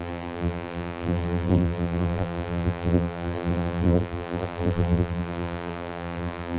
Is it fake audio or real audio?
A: fake